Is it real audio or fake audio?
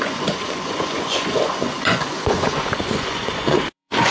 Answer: fake